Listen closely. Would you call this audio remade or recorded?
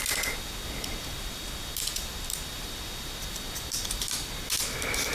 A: recorded